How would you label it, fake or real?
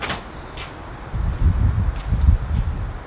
real